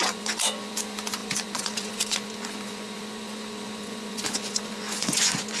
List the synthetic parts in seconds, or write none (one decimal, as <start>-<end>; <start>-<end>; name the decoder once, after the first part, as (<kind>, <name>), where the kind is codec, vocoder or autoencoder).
0.0-5.6 (vocoder, Vocos)